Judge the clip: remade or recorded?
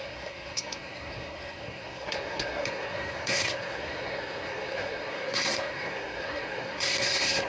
remade